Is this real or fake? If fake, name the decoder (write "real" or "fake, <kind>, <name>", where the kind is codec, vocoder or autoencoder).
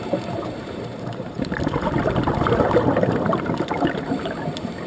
fake, vocoder, BigVGAN v2